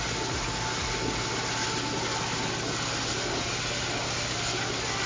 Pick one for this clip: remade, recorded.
recorded